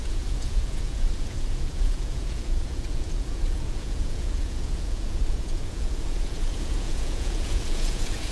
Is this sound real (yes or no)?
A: no